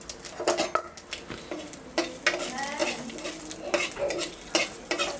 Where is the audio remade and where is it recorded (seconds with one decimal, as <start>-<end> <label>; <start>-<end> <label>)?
0.0-5.2 recorded